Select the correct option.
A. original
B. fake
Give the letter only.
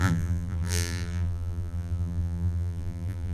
B